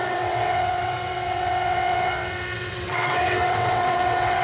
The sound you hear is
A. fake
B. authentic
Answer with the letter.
A